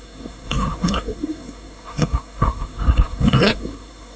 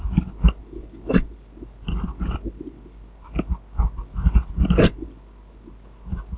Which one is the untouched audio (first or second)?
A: second